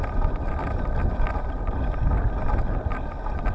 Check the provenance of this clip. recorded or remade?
recorded